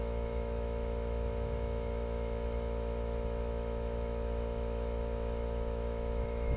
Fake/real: fake